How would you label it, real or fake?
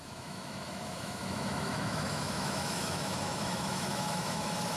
fake